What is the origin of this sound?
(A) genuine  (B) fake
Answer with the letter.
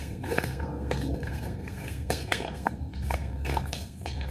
B